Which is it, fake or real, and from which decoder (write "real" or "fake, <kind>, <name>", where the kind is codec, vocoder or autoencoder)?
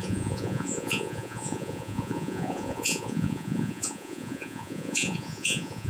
fake, vocoder, Vocos